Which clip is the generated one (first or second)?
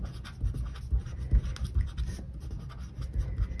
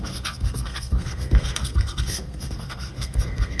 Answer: second